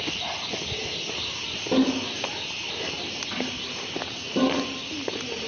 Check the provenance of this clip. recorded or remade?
recorded